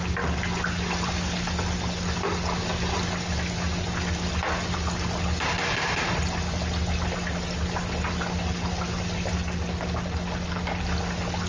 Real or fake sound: real